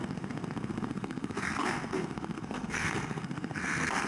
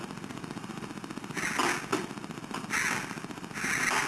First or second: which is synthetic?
first